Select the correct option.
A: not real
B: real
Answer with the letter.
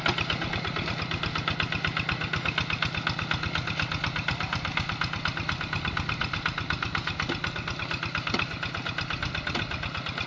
B